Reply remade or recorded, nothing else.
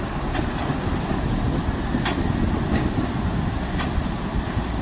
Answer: recorded